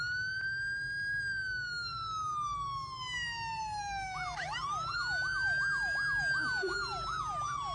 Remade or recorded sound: recorded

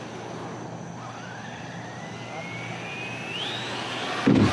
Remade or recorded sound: recorded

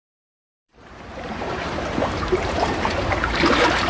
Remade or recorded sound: remade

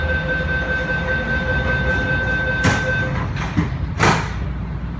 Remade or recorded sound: recorded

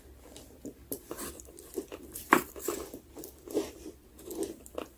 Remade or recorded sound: remade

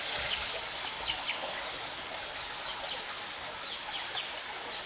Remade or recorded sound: recorded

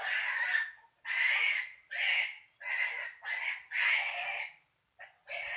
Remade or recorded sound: recorded